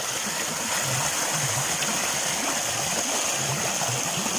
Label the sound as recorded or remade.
recorded